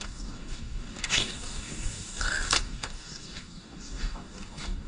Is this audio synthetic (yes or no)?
yes